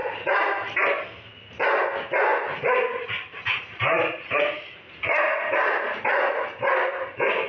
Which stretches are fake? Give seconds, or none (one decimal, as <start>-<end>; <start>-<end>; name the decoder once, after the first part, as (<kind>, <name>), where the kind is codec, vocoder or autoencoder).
2.3-6.8 (vocoder, BigVGAN v2)